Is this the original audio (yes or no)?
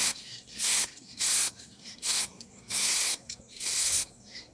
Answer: no